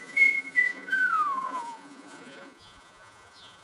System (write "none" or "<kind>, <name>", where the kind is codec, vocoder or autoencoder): vocoder, Vocos